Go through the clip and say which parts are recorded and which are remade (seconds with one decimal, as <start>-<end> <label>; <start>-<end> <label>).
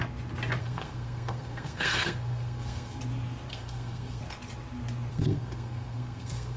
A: 0.0-0.6 recorded; 0.6-3.0 remade; 3.0-3.5 recorded; 3.5-4.2 remade; 4.2-5.1 recorded; 5.1-6.6 remade